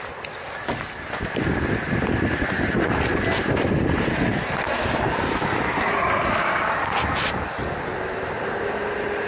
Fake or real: real